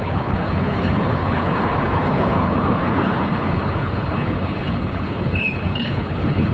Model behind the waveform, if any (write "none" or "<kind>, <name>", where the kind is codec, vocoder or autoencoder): codec, HILCodec